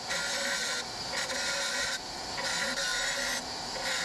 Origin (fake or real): real